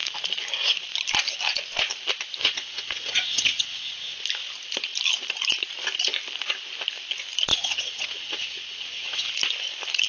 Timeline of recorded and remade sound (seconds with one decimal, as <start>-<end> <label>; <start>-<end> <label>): 0.0-2.4 recorded; 2.4-4.2 remade; 4.2-7.5 recorded; 7.5-9.3 remade; 9.3-10.1 recorded